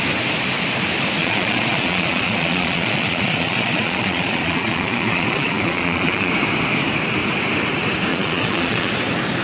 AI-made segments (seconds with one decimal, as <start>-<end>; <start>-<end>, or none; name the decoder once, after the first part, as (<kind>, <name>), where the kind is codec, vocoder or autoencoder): 1.2-6.3 (vocoder, Vocos); 8.1-8.9